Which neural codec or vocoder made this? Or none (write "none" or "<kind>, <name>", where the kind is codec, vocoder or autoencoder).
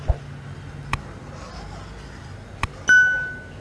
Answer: none